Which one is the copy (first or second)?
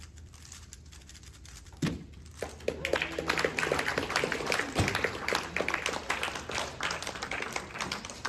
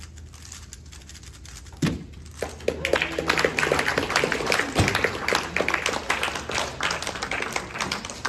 first